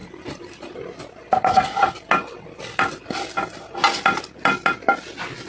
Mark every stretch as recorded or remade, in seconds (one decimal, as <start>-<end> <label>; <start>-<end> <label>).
0.0-5.5 recorded